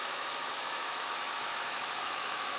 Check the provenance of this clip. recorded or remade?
remade